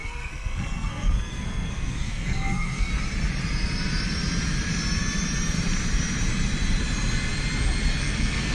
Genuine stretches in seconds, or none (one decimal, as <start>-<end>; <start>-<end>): 2.9-8.0